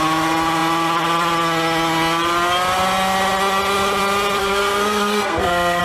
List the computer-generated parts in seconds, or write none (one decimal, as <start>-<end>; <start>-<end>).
4.4-5.8